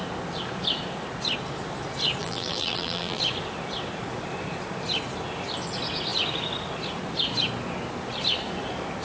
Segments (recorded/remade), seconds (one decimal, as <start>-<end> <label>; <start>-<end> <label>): 0.0-2.2 recorded; 2.2-3.2 remade; 3.2-9.0 recorded